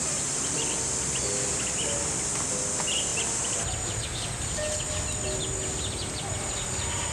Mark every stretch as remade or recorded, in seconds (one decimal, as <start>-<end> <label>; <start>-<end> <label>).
0.0-7.1 recorded